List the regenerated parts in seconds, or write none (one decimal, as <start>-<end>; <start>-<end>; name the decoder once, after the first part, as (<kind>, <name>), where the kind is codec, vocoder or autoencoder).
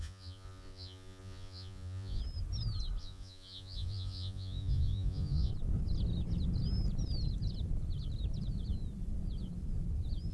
0.0-2.2 (vocoder, Vocos); 3.0-5.5